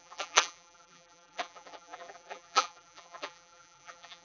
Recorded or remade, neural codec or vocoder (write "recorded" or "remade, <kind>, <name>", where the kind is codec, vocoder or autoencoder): remade, vocoder, BigVGAN v2